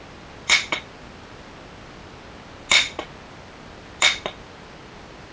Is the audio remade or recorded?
recorded